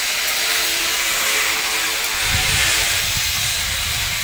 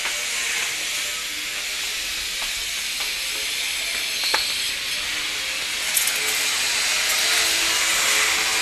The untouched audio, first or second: second